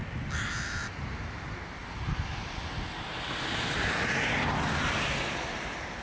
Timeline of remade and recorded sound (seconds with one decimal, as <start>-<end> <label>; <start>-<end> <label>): 0.0-6.0 recorded

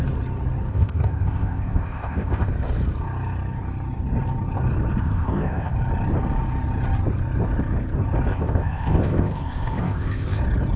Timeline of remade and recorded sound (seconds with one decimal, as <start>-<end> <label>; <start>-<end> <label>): 0.0-0.7 recorded; 0.7-2.5 remade; 2.5-5.0 recorded; 5.0-5.7 remade; 5.7-8.3 recorded; 8.3-10.4 remade; 10.4-10.8 recorded

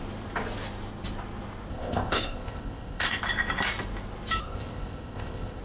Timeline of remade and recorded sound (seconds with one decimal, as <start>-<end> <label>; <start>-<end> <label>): 0.0-1.7 recorded; 1.7-3.2 remade; 3.2-4.4 recorded; 4.4-5.6 remade

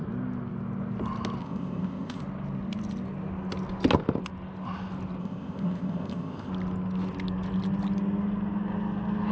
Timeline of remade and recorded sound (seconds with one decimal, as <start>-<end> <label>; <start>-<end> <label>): 0.0-1.4 recorded; 1.4-2.2 remade; 2.2-5.2 recorded; 5.2-6.5 remade; 6.5-9.3 recorded

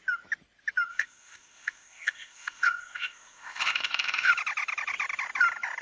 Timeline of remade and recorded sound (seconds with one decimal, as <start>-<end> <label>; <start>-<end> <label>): 0.0-0.9 recorded; 0.9-4.3 remade; 4.3-5.8 recorded

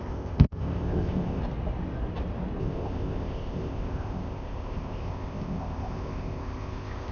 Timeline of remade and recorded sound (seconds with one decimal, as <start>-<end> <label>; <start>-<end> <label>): 0.0-1.4 remade; 1.4-2.6 recorded; 2.6-7.1 remade

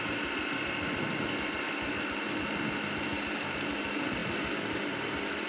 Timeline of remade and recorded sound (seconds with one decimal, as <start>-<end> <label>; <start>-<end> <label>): 0.0-5.5 recorded

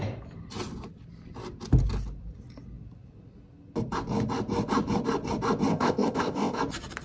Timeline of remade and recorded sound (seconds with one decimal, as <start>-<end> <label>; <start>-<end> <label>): 0.0-5.7 recorded; 5.7-6.6 remade; 6.6-7.0 recorded